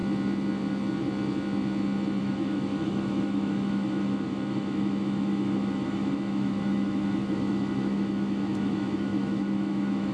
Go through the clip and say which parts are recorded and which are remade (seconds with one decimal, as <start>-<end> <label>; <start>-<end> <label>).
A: 0.0-2.2 recorded; 2.2-10.1 remade